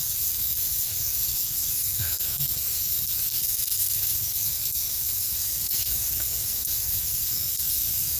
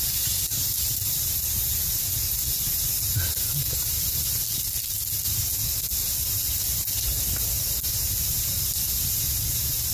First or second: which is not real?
first